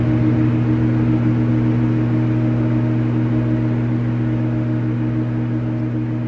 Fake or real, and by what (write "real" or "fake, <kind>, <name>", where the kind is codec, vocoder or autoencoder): real